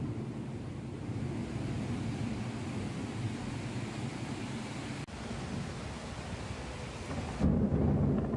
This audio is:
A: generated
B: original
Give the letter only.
B